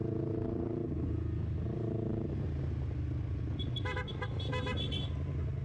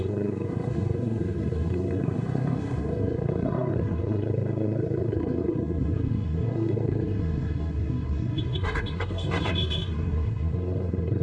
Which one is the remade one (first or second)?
second